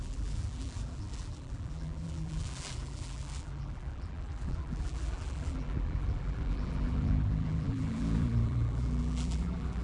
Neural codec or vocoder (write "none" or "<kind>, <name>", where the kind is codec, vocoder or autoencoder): vocoder, BigVGAN v2